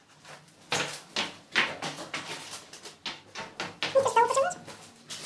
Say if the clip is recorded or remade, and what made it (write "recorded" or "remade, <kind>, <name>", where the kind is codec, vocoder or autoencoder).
recorded